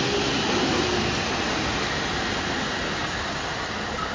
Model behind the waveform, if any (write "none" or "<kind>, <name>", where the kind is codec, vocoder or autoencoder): none